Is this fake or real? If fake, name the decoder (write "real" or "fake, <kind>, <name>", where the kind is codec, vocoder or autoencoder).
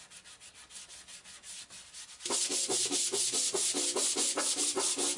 real